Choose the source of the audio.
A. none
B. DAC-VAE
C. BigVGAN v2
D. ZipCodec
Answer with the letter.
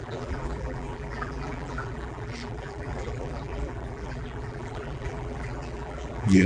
C